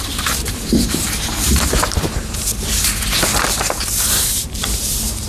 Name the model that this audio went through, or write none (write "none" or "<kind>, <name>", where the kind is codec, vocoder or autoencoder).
vocoder, BigVGAN v2